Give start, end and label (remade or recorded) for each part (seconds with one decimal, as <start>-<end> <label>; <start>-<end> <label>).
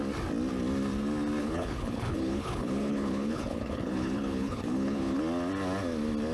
0.0-1.4 recorded; 1.4-5.2 remade; 5.2-6.3 recorded